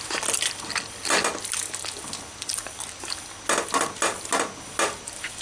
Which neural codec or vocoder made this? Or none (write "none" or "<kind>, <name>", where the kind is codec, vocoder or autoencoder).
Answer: none